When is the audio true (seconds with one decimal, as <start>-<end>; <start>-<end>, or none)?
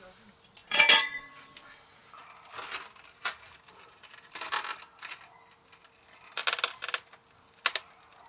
0.0-0.6; 1.4-8.3